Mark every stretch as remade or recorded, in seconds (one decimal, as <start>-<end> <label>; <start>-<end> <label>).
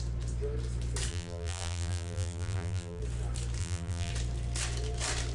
0.0-1.1 recorded; 1.1-3.0 remade; 3.0-3.6 recorded; 3.6-4.1 remade; 4.1-5.3 recorded